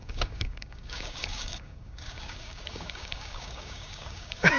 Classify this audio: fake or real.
fake